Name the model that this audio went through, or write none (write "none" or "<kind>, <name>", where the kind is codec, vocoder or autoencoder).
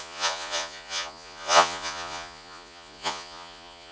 vocoder, Vocos